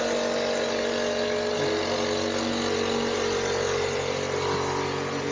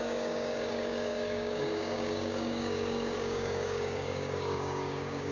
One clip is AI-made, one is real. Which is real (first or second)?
first